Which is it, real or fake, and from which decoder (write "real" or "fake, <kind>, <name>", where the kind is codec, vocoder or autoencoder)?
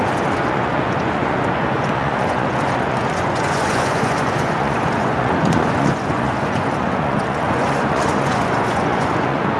fake, vocoder, Vocos